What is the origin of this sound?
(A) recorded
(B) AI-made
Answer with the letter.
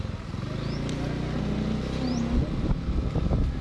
A